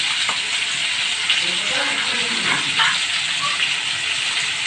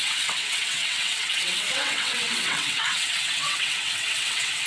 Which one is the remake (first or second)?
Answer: second